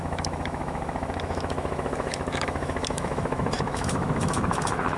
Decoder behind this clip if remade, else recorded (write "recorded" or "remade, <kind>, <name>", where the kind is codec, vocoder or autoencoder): remade, autoencoder, DAC-VAE